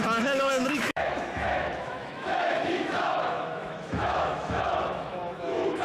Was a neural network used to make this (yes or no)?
yes